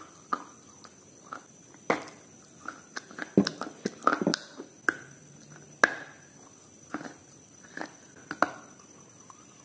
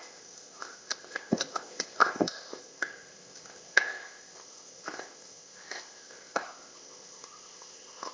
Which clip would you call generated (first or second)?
second